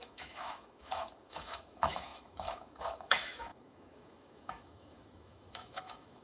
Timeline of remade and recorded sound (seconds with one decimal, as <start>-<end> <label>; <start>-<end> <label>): 0.0-6.2 remade